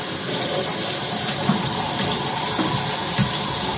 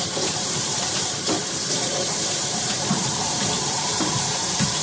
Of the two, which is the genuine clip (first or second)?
first